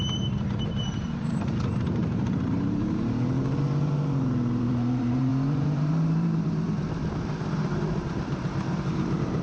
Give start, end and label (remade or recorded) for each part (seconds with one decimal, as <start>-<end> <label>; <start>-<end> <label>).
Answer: 0.0-9.4 remade